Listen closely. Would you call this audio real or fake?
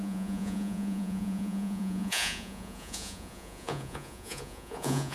fake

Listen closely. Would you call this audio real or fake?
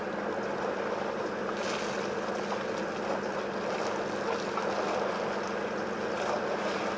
real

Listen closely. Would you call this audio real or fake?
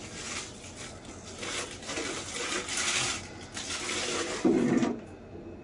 real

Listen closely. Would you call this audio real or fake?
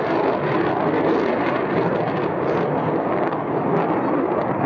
real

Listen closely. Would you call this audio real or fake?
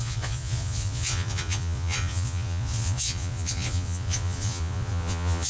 fake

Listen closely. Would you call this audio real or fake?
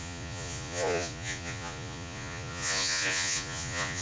fake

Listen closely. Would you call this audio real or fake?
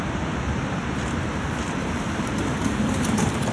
fake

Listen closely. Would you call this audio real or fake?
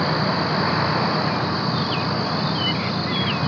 real